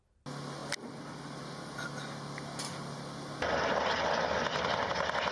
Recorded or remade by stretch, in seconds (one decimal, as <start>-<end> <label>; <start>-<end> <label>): 0.0-5.3 recorded